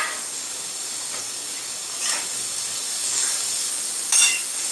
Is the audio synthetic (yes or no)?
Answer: yes